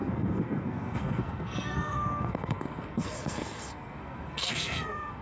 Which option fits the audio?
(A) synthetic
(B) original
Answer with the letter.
A